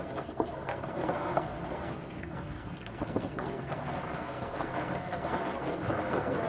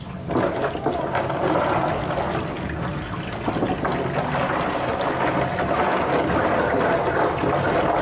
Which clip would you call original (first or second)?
second